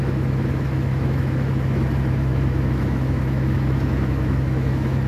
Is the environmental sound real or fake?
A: fake